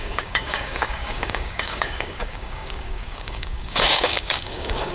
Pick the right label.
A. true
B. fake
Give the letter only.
B